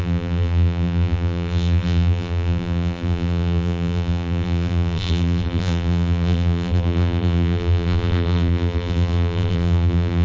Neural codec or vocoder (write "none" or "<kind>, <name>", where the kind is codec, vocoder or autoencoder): vocoder, BigVGAN v2